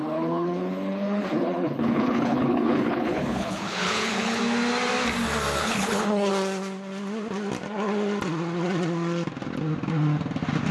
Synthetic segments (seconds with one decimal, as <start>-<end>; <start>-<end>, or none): 0.0-4.4; 5.6-6.3